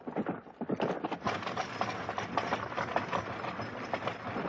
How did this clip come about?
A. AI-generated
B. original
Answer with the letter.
B